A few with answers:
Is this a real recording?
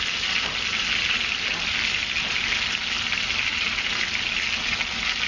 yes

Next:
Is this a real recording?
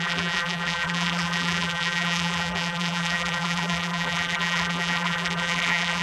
no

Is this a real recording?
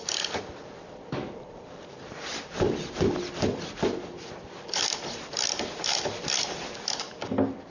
no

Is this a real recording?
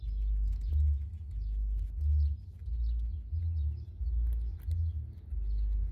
yes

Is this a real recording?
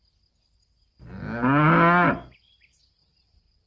yes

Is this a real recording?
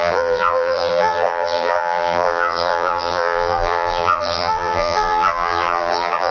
no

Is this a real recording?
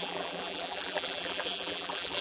no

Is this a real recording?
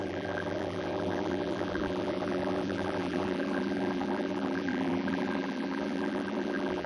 no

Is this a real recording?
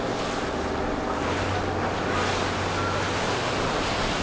yes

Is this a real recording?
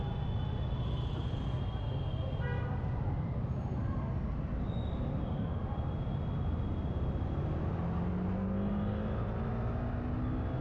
yes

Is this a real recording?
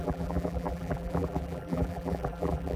no